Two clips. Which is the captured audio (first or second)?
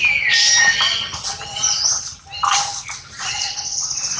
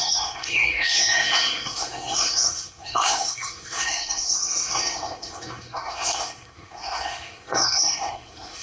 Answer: first